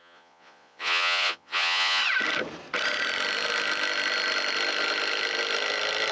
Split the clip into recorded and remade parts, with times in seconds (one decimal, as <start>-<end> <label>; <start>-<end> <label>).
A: 0.0-2.0 remade; 2.0-6.1 recorded